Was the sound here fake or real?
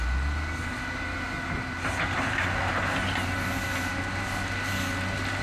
real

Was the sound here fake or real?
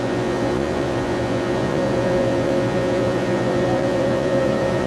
fake